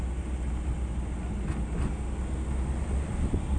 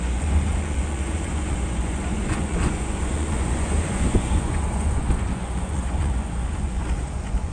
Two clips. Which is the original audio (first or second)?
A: first